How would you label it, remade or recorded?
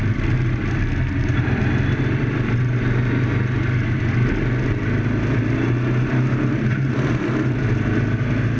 recorded